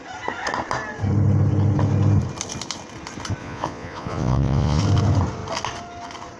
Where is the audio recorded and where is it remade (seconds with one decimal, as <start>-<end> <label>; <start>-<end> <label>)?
0.0-3.4 recorded; 3.4-4.8 remade; 4.8-6.4 recorded